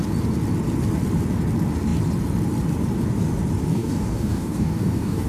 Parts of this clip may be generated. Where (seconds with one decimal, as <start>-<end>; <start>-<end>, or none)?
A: 3.7-5.3